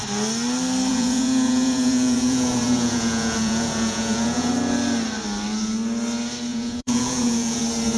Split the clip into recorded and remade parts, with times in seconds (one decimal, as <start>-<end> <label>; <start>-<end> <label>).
0.0-0.9 recorded; 0.9-4.5 remade; 4.5-6.5 recorded; 6.5-7.6 remade; 7.6-8.0 recorded